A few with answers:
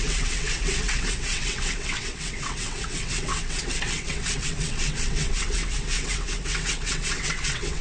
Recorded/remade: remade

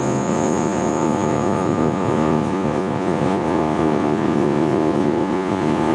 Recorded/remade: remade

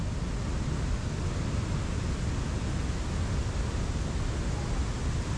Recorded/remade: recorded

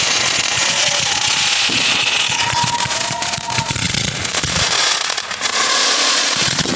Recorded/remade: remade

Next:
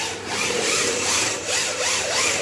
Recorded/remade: remade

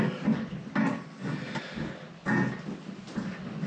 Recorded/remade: recorded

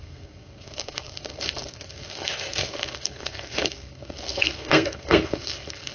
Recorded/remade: remade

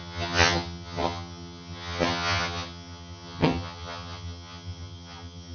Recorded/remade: remade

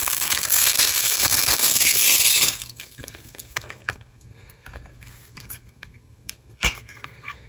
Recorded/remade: remade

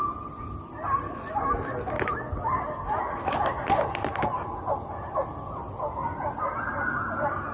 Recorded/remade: recorded